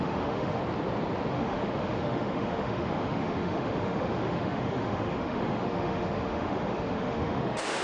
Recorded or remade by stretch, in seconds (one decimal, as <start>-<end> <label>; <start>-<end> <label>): 0.0-0.6 remade; 0.6-1.3 recorded; 1.3-7.8 remade